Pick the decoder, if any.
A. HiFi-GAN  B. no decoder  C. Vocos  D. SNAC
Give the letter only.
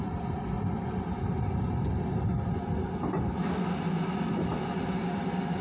B